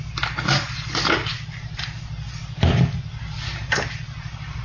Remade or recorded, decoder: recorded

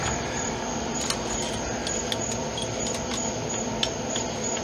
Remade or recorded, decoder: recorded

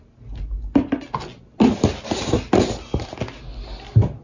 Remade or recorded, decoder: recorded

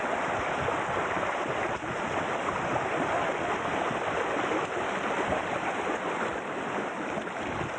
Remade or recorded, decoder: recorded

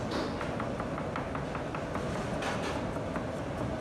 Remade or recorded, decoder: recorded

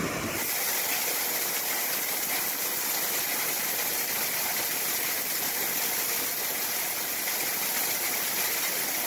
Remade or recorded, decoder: recorded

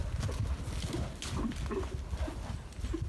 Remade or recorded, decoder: recorded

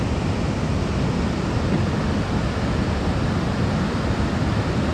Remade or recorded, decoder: recorded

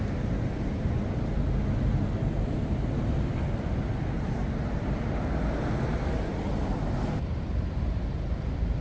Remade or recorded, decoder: recorded